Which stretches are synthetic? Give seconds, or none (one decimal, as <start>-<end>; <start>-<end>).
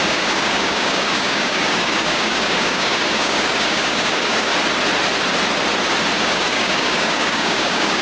0.0-4.5; 6.2-8.0